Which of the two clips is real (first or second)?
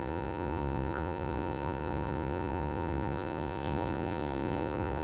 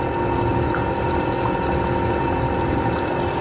second